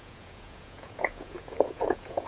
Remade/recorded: remade